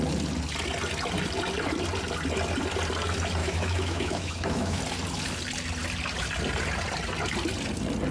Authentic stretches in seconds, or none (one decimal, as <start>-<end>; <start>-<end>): 0.0-3.4; 4.8-8.1